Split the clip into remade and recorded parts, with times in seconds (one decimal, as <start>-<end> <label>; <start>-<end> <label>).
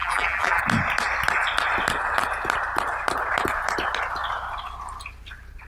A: 0.0-0.6 remade; 0.6-5.7 recorded